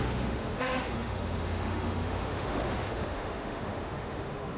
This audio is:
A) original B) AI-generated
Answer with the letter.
B